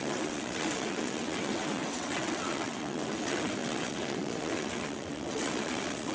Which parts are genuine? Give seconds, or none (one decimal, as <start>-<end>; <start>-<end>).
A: none